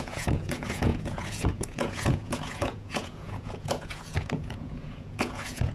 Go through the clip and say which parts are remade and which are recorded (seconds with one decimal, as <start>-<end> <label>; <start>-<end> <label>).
0.0-5.7 remade